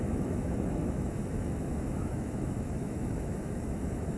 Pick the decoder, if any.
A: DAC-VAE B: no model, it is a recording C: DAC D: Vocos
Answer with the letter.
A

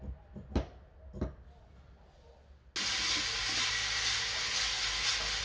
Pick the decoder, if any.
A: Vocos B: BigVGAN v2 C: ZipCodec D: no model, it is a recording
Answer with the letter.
D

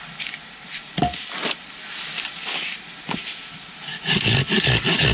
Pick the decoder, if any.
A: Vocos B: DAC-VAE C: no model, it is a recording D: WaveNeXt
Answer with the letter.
C